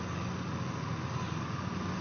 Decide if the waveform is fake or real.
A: real